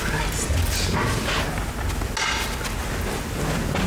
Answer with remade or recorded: recorded